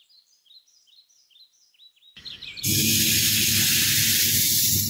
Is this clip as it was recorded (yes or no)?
no